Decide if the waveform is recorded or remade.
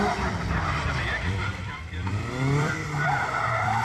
remade